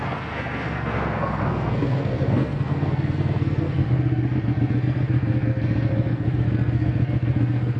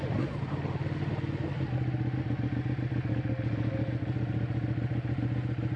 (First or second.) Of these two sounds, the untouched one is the second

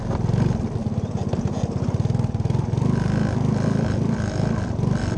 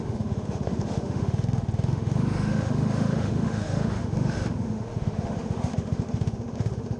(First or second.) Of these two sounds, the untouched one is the first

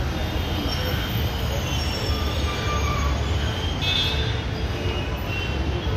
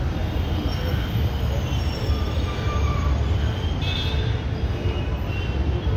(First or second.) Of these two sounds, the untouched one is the first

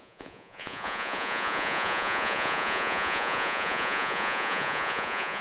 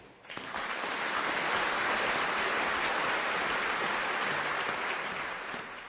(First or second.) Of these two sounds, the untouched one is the second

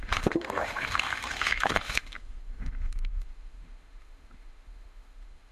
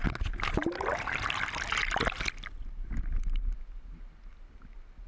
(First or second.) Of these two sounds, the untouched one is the second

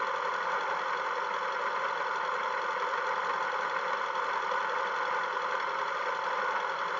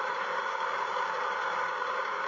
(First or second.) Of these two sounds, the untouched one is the first